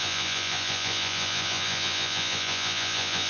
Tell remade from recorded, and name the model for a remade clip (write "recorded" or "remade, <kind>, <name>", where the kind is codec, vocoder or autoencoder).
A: remade, vocoder, Vocos